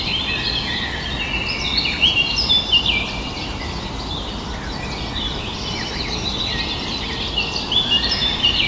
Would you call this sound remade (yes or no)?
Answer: no